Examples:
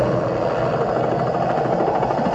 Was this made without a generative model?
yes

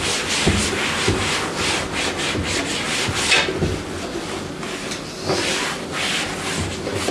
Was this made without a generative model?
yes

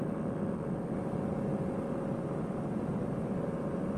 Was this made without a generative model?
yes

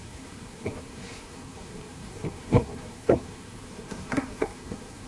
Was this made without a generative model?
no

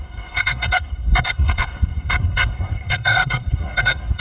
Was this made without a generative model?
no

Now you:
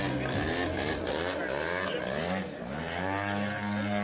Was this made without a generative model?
yes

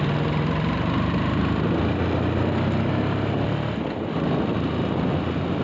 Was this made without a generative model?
yes